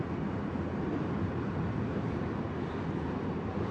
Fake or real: fake